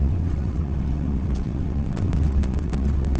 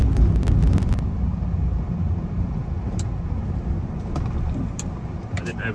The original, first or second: second